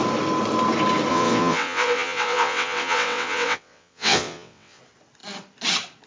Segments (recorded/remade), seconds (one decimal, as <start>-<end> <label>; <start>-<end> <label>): 0.0-1.1 recorded; 1.1-4.8 remade; 4.8-6.1 recorded